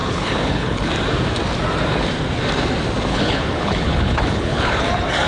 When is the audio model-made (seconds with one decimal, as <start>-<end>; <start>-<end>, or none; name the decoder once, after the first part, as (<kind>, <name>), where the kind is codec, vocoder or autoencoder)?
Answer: 0.0-0.9 (codec, HILCodec); 3.1-4.8